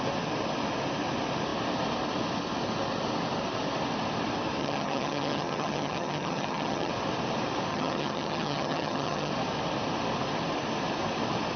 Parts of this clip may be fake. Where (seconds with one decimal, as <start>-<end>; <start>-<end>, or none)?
4.6-6.9; 7.7-9.3